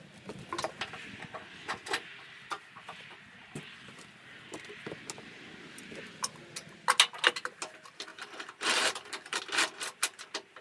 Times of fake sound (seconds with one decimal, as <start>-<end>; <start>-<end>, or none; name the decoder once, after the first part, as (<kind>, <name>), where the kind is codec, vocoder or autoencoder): 8.1-9.4 (vocoder, BigVGAN v2)